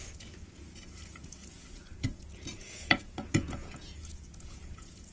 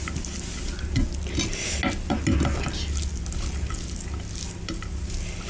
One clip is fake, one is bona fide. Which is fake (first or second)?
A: first